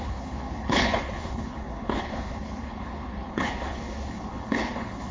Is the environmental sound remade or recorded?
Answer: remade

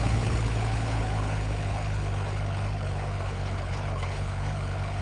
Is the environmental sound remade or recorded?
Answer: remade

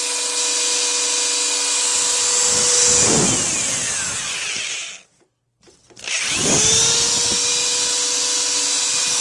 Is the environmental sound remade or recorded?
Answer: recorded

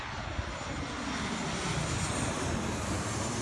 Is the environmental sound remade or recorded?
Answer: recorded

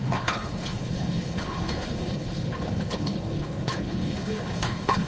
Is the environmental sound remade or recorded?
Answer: remade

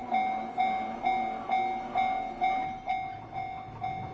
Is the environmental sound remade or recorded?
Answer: recorded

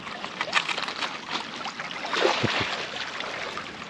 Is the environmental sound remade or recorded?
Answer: recorded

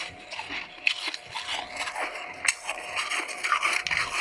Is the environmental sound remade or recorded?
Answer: recorded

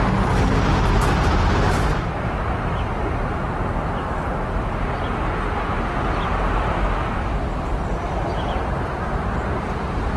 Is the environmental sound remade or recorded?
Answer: recorded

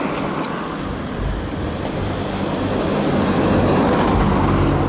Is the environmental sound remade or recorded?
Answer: recorded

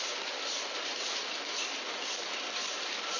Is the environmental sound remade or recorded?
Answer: recorded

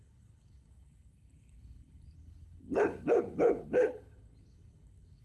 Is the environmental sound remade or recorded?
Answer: remade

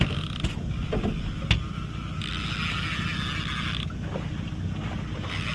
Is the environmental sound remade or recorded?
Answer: recorded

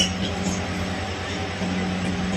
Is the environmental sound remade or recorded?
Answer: recorded